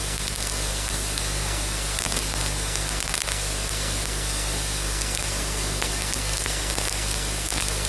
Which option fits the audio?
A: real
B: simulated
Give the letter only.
B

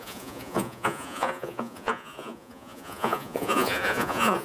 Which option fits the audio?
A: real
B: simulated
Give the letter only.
B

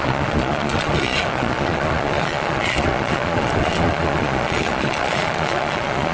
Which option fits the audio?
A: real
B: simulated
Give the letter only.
B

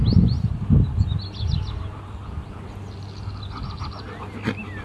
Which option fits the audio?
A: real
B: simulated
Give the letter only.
A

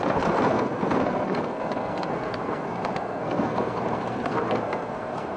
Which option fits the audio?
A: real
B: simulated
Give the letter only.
B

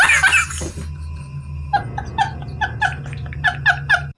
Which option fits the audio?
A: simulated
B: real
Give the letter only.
B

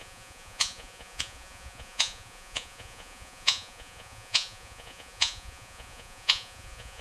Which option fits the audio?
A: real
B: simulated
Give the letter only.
B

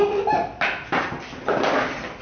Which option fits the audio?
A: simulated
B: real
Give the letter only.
B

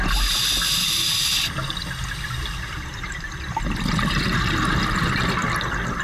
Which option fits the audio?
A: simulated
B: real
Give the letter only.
B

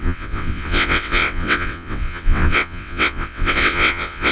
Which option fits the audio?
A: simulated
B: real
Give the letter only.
A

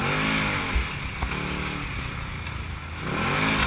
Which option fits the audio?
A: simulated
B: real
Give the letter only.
B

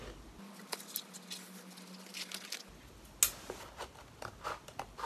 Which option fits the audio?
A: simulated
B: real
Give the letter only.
B